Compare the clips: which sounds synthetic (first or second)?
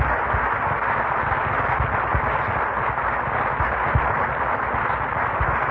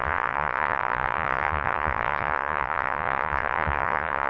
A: second